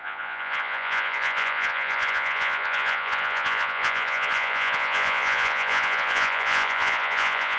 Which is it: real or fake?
fake